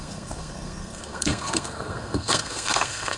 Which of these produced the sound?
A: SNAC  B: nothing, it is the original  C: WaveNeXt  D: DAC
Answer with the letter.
A